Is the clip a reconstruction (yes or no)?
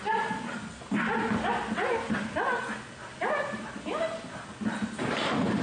no